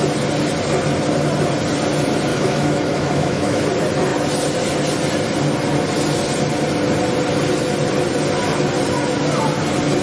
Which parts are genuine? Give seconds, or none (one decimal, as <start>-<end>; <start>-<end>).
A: 0.0-2.3; 3.6-10.0